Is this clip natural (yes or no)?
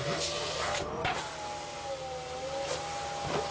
yes